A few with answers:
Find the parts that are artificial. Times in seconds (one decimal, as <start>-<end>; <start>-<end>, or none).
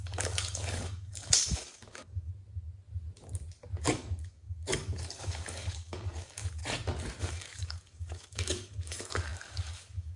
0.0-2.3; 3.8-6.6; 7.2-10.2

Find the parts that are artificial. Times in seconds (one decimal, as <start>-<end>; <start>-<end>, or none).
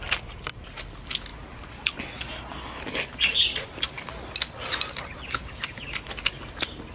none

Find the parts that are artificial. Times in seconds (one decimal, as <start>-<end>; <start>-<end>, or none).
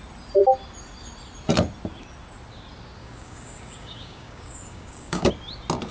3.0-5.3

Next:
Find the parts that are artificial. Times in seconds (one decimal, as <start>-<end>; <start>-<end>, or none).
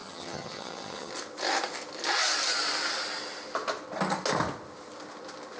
0.0-1.1